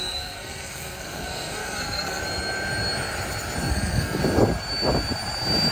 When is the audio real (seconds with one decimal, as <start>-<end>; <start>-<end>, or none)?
2.2-3.7; 4.2-5.7